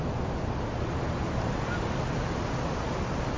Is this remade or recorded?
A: recorded